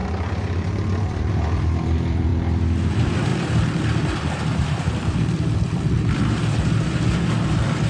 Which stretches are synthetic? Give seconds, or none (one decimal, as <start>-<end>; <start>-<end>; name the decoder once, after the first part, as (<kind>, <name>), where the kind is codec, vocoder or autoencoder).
0.0-2.3 (vocoder, BigVGAN v2); 2.9-7.9